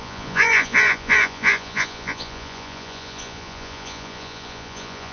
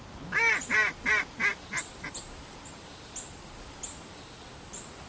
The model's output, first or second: first